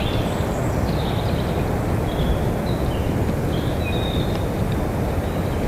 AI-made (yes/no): no